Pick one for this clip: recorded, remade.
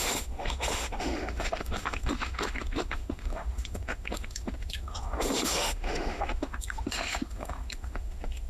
remade